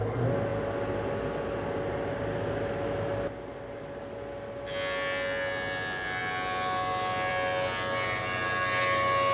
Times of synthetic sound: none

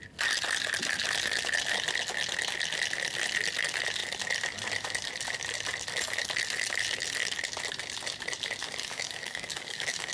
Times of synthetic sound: 8.8-10.1 (codec, DAC)

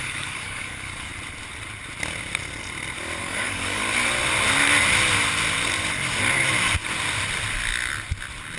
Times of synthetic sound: 0.0-1.1 (codec, DAC); 3.2-3.8

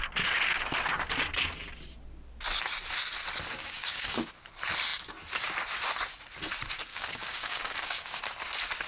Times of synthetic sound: 3.6-4.3 (codec, DAC); 6.9-8.2

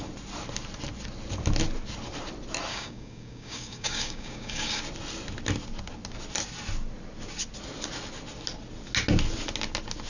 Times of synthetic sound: 2.7-4.8 (codec, DAC)

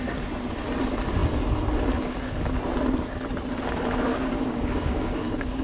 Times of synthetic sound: 4.1-5.6 (codec, DAC)

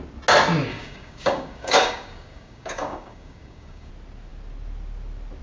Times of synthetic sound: 0.7-3.9 (codec, DAC)

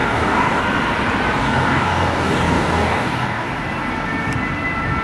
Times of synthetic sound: 0.0-0.6 (codec, DAC); 1.4-3.5